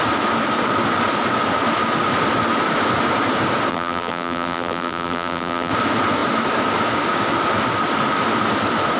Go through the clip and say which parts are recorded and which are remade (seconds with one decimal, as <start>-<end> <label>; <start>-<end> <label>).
0.0-3.7 recorded; 3.7-5.7 remade; 5.7-9.0 recorded